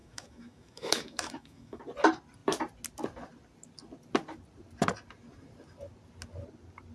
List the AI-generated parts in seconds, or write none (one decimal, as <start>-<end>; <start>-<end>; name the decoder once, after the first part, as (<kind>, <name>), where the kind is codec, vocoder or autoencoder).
0.0-1.8 (autoencoder, DAC-VAE)